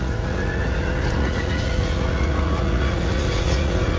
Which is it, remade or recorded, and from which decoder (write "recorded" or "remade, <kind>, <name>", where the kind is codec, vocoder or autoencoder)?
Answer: remade, vocoder, Vocos